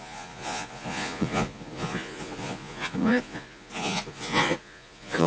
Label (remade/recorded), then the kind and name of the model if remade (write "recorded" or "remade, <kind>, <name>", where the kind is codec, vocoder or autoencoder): remade, vocoder, Vocos